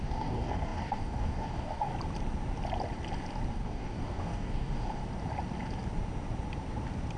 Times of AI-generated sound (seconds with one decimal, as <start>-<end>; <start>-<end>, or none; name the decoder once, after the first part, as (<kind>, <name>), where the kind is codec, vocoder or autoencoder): 0.0-1.9 (codec, DAC); 3.5-5.0